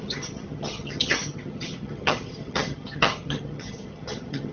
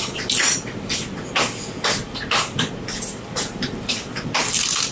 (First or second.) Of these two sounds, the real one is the second